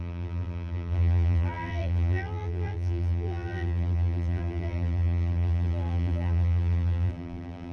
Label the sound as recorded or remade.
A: remade